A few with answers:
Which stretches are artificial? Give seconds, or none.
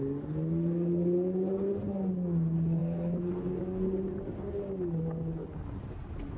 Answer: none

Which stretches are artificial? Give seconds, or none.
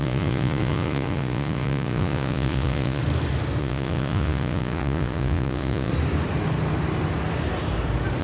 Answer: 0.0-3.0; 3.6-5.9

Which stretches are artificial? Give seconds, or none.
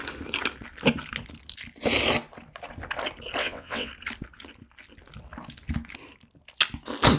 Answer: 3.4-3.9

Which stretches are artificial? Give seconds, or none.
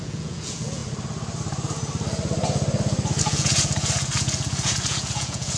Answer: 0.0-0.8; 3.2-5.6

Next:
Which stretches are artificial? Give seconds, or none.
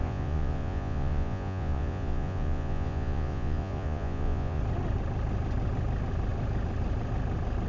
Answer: 0.0-4.6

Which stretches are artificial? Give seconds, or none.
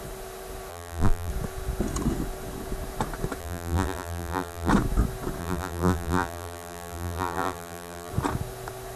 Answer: 0.7-1.3; 3.4-4.7; 5.4-8.1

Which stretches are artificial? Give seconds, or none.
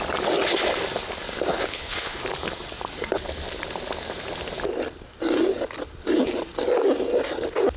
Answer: 1.5-2.2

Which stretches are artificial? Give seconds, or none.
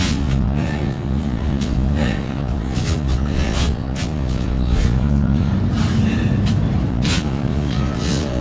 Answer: 0.0-5.5; 6.9-8.4